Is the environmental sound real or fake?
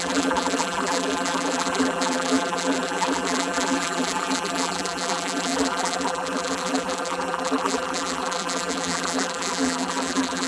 fake